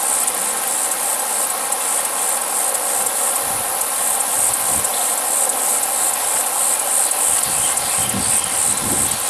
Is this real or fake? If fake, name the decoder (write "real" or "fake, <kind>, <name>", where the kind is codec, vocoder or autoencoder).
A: real